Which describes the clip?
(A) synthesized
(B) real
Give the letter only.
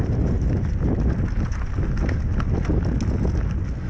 B